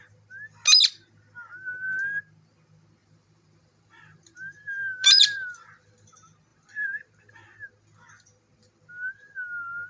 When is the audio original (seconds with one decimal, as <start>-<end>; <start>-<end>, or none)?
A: 0.0-3.0; 5.9-6.5; 7.1-9.9